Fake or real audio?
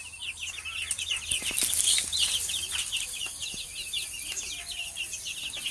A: real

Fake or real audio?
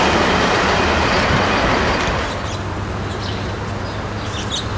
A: real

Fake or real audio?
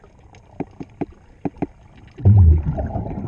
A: real